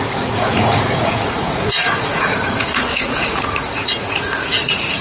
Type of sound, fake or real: fake